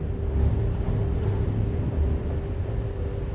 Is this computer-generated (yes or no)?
no